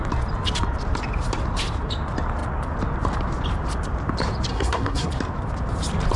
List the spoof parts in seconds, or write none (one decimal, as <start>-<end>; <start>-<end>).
4.5-5.1